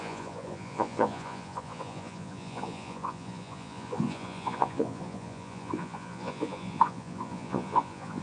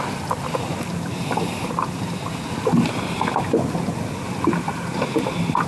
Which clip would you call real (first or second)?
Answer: second